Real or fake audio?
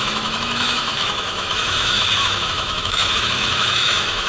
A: fake